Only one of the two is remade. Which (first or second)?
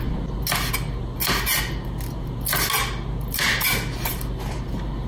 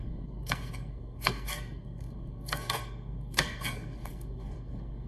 second